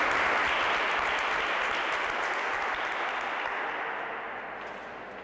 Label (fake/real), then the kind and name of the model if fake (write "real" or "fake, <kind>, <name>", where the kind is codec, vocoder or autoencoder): real